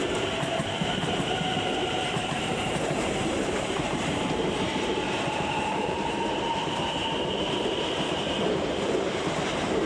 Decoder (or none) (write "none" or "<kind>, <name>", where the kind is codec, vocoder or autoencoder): vocoder, BigVGAN v2